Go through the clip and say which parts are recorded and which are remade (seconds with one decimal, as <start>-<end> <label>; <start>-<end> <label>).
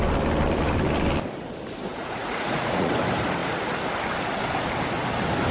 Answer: 0.0-1.9 recorded; 1.9-2.9 remade; 2.9-5.5 recorded